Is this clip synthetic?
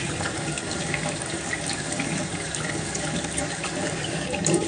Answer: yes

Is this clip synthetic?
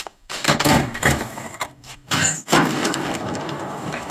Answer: yes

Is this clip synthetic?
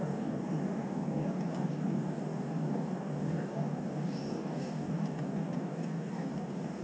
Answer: yes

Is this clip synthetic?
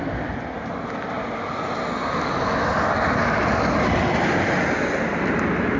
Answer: no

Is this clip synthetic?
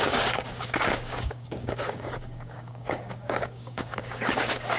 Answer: yes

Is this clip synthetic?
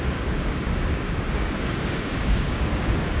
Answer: yes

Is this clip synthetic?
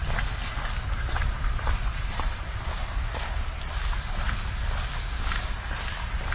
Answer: no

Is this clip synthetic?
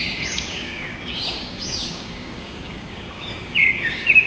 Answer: yes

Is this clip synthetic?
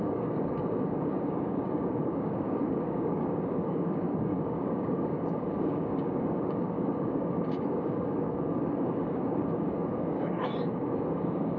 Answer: yes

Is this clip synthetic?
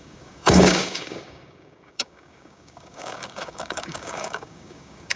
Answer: yes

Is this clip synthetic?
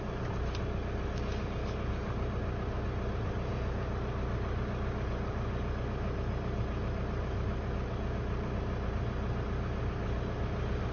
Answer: no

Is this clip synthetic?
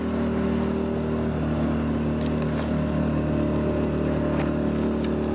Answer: no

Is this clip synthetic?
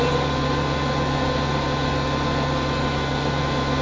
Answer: no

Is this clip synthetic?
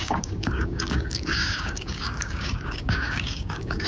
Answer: yes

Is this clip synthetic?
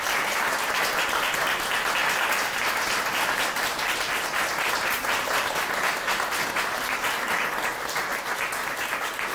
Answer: no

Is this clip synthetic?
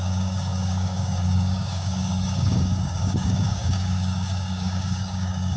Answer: yes